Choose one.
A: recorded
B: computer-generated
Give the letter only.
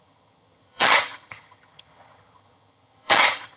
B